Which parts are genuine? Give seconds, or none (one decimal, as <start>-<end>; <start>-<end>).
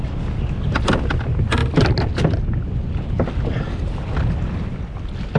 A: 0.0-5.4